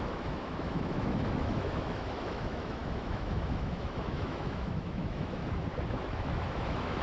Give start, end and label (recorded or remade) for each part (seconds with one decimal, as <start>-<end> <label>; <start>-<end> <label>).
0.0-5.4 remade; 5.4-5.9 recorded; 5.9-7.0 remade